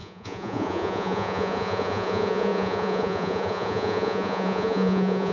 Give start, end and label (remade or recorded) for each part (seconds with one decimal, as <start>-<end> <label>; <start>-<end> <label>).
0.0-5.3 remade